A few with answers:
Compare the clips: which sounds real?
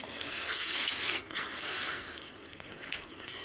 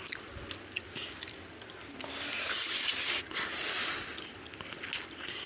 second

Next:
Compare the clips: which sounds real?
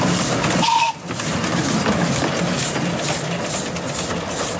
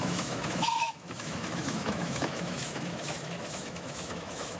first